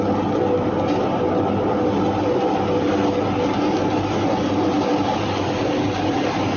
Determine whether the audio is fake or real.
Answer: real